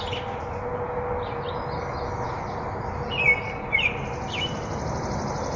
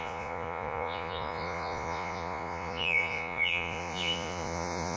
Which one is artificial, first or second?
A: second